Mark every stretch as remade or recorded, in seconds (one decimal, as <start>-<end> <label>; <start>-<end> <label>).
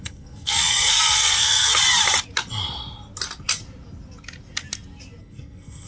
0.0-1.7 remade; 1.7-5.2 recorded; 5.2-5.9 remade